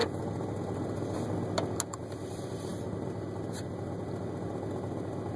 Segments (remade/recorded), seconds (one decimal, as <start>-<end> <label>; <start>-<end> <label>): 0.0-2.0 recorded; 2.0-5.4 remade